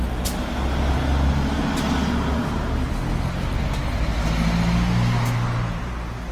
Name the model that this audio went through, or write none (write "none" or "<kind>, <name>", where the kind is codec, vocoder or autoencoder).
none